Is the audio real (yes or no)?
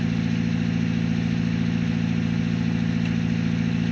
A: yes